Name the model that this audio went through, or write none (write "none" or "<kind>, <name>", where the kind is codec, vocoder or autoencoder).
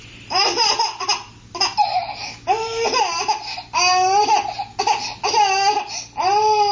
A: none